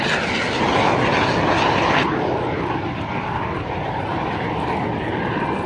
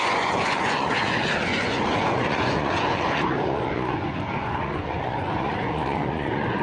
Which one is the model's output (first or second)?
second